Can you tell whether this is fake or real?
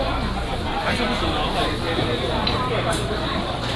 real